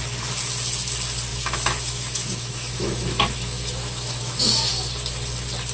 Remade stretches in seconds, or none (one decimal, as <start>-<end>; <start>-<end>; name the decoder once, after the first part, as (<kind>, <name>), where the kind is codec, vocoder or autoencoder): 1.3-4.7 (autoencoder, DAC-VAE)